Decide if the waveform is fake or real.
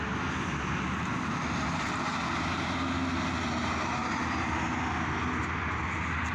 real